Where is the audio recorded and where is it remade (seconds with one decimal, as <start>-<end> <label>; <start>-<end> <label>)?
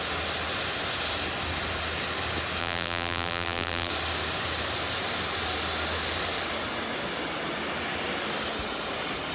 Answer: 0.0-2.6 recorded; 2.6-3.9 remade; 3.9-9.3 recorded